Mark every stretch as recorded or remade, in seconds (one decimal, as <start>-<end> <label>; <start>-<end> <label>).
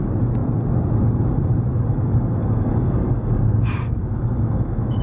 0.0-1.7 recorded; 1.7-5.0 remade